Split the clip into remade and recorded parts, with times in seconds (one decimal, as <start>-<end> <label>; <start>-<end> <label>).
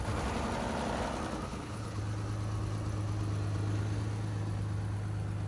0.0-1.5 recorded; 1.5-2.0 remade; 2.0-5.5 recorded